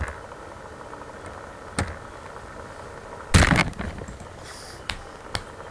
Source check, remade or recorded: recorded